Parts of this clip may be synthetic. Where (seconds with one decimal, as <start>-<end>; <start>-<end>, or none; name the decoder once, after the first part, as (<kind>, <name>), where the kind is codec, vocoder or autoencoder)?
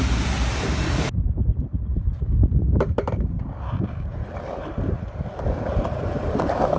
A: 0.0-1.9 (vocoder, BigVGAN v2); 2.6-6.8